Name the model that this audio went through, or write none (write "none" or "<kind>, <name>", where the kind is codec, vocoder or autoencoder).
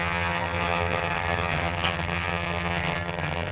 vocoder, HiFi-GAN